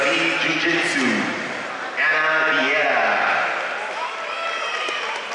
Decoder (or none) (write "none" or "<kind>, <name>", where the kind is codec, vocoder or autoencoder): none